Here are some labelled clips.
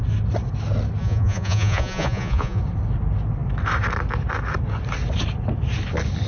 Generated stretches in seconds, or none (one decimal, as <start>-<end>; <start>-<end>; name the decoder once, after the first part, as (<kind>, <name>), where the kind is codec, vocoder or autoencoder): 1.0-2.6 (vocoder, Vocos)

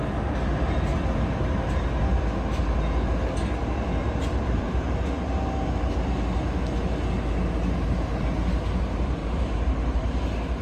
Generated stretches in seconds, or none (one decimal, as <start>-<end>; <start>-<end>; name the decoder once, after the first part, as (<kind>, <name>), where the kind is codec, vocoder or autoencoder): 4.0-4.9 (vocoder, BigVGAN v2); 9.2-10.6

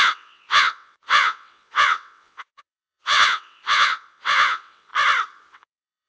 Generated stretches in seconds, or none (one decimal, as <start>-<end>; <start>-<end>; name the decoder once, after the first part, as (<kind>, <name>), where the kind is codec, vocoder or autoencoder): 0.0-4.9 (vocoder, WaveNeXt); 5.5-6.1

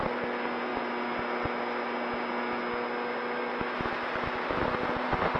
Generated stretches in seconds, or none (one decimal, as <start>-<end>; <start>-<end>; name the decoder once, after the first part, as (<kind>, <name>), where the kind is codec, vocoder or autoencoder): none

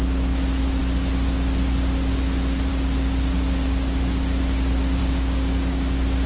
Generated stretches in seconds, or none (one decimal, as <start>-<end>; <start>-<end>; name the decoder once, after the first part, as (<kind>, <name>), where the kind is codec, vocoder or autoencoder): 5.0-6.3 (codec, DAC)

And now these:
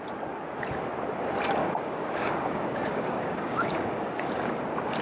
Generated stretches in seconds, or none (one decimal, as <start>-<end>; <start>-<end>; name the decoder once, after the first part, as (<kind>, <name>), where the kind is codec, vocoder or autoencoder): 1.6-4.6 (codec, DAC)